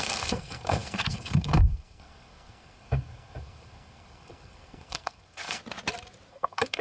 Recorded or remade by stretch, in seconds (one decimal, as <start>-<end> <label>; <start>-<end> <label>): 0.0-5.6 remade; 5.6-6.3 recorded; 6.3-6.8 remade